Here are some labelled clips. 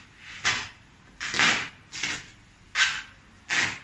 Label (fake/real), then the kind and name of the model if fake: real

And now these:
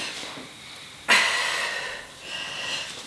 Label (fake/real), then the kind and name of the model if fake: real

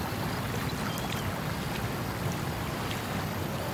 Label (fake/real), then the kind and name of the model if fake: real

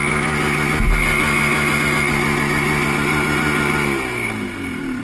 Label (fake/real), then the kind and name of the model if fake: real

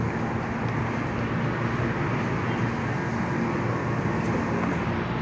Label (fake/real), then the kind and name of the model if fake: real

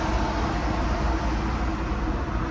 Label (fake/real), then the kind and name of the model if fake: real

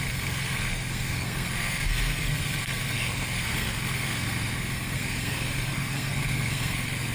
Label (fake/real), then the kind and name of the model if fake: fake, codec, SNAC